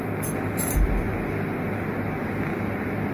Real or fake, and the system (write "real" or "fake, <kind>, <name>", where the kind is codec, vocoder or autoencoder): real